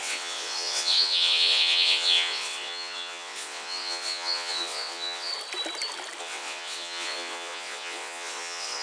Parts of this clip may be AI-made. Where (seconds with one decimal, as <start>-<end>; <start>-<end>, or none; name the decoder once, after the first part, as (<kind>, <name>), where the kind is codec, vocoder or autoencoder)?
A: 0.0-5.3 (vocoder, WaveNeXt); 6.2-8.8